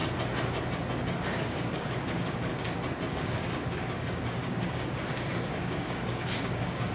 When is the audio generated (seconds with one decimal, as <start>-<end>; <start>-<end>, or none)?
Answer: 1.3-2.5; 3.1-6.9